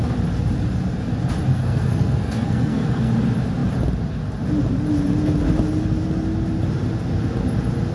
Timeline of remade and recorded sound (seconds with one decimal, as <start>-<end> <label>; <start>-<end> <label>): 0.0-1.5 recorded; 1.5-3.1 remade; 3.1-7.9 recorded